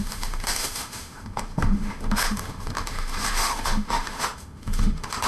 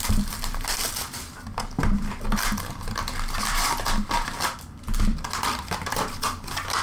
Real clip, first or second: second